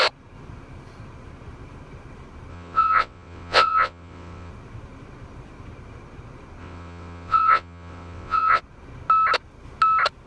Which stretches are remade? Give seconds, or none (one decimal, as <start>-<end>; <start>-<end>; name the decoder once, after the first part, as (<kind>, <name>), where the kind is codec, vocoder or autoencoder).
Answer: 2.5-4.5 (vocoder, WaveNeXt); 6.6-8.6